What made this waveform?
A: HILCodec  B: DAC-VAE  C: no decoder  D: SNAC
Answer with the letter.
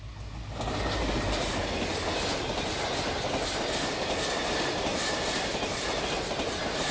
C